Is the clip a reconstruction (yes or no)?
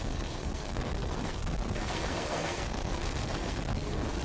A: yes